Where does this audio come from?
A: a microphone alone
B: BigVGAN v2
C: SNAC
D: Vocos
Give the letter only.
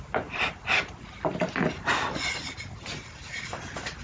A